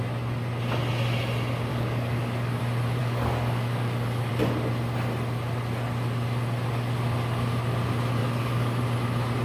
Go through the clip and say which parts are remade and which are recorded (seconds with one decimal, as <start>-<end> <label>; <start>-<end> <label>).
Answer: 0.0-1.7 recorded; 1.7-2.6 remade; 2.6-3.0 recorded; 3.0-4.3 remade; 4.3-8.2 recorded; 8.2-8.8 remade; 8.8-9.4 recorded